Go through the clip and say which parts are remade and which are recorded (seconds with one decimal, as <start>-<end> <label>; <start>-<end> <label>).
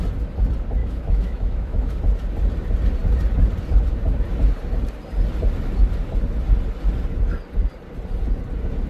0.0-0.8 recorded; 0.8-2.0 remade; 2.0-8.9 recorded